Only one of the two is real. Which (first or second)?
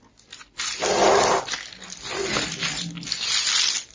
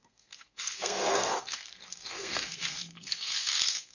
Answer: first